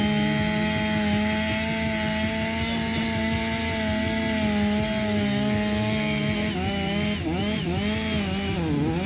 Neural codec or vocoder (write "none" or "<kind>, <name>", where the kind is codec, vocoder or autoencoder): none